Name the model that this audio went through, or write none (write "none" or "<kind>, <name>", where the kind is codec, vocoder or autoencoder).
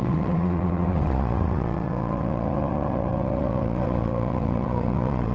vocoder, WaveNeXt